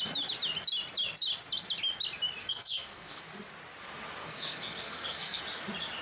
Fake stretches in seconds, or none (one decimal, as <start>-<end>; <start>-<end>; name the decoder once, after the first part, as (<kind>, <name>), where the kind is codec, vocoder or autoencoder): 2.4-3.2 (codec, SNAC); 4.2-5.4